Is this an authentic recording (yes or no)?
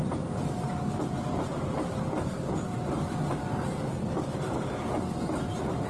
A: yes